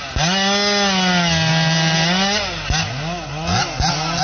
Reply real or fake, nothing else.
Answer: real